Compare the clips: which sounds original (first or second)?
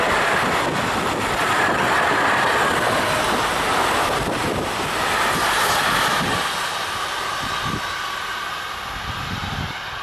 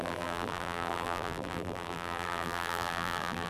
first